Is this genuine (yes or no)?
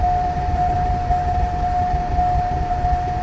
yes